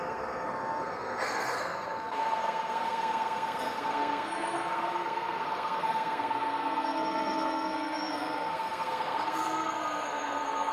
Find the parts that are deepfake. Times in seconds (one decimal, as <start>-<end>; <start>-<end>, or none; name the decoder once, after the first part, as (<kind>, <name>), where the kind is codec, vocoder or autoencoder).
0.0-10.7 (codec, SNAC)

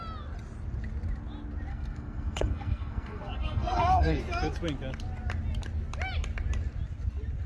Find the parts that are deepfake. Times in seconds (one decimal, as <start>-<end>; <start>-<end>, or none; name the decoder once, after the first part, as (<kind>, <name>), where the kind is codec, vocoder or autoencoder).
1.7-4.2 (codec, SNAC)

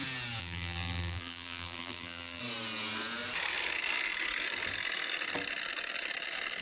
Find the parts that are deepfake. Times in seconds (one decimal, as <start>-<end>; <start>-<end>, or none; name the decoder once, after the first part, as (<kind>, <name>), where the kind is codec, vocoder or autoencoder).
0.4-2.4 (vocoder, BigVGAN v2)

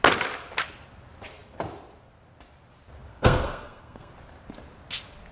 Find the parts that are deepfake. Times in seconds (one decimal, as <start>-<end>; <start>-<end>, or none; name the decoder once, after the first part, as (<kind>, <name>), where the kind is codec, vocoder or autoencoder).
3.1-4.1 (codec, SNAC)

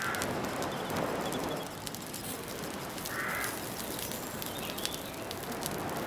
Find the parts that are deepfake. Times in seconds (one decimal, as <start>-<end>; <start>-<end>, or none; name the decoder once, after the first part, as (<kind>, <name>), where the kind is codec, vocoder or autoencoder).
none

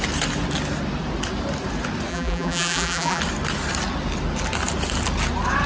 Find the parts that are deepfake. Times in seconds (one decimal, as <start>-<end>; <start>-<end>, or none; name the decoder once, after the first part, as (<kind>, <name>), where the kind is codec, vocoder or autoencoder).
2.1-3.2 (vocoder, BigVGAN v2)

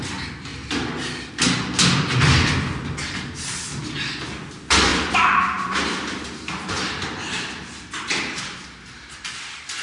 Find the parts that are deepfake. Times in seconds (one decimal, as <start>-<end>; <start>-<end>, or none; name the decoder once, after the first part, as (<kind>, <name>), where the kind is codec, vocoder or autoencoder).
4.9-9.3 (vocoder, BigVGAN v2)